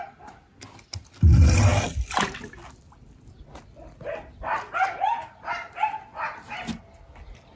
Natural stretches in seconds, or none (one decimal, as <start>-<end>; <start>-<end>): 0.0-7.6

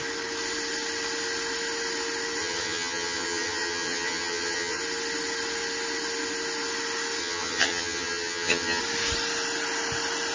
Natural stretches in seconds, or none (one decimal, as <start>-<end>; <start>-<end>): 0.0-2.4; 4.8-7.2; 8.8-10.3

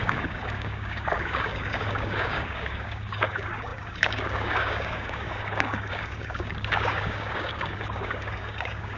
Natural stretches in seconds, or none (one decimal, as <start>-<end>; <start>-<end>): none

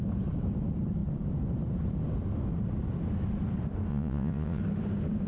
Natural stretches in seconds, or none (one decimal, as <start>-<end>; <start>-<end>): 0.0-3.9; 4.6-5.3

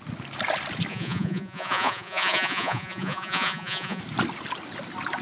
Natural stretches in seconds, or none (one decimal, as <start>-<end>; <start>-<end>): 0.0-0.9; 4.0-5.2